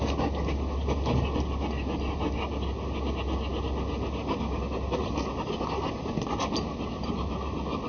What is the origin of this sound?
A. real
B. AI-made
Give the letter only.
A